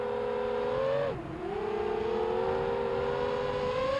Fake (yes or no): no